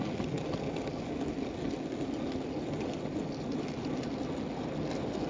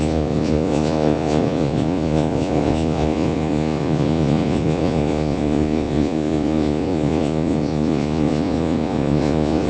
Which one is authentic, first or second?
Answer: first